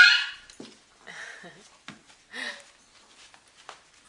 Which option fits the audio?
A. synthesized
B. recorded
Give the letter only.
B